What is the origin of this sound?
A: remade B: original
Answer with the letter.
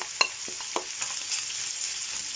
B